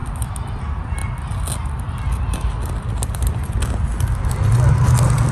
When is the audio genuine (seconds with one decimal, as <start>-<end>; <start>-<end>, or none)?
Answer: 0.0-5.3